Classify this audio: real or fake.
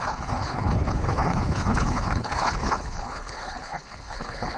fake